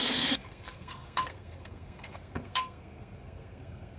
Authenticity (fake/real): fake